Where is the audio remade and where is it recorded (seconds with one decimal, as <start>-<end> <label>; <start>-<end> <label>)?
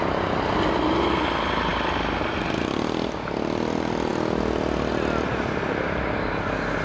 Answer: 0.0-6.8 recorded